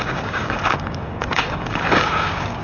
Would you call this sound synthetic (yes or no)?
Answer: yes